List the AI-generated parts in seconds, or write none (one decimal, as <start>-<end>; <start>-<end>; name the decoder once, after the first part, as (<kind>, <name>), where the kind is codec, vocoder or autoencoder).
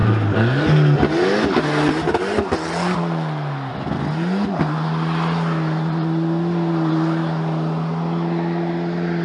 none